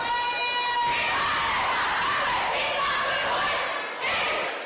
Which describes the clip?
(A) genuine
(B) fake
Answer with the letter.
A